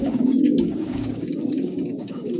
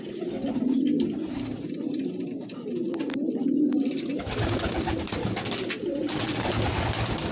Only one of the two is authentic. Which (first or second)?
second